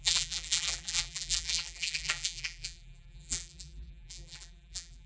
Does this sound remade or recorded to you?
remade